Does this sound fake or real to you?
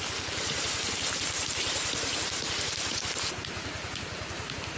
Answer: real